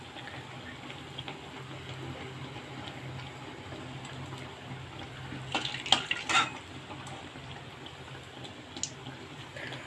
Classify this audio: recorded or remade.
recorded